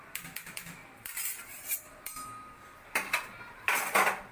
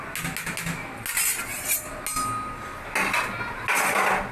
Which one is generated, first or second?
first